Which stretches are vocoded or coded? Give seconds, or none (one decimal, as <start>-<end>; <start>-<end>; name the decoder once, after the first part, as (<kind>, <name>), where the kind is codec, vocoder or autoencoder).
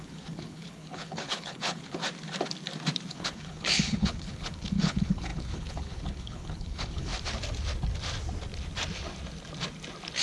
0.0-2.0 (codec, HILCodec); 3.1-7.1